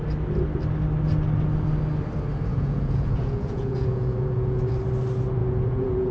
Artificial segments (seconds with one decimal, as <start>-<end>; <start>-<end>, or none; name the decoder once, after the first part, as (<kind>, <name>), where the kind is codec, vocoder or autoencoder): 2.5-4.7 (vocoder, Vocos); 5.4-6.1